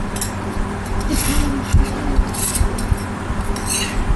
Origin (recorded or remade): recorded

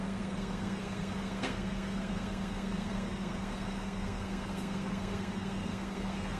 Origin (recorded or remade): remade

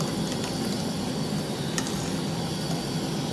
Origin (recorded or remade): recorded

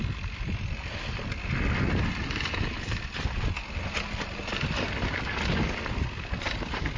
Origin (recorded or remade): recorded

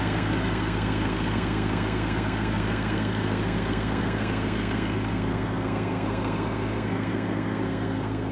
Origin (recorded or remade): remade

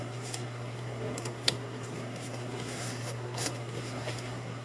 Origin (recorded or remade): remade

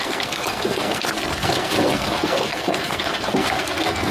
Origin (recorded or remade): remade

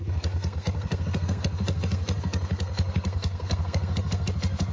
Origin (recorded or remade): remade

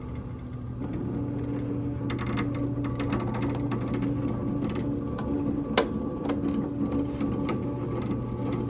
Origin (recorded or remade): recorded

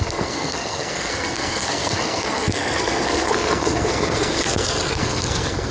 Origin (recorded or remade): remade